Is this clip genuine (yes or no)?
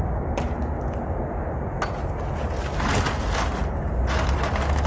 yes